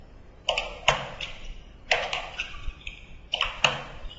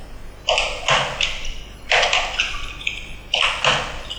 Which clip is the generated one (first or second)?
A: first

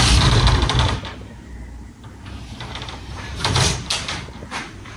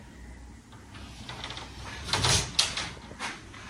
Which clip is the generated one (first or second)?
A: first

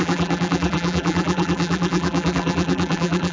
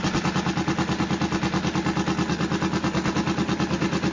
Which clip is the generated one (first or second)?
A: first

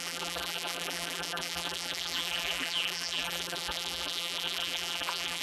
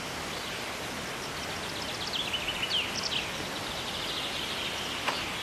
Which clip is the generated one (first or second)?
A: first